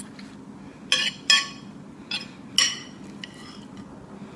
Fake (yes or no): no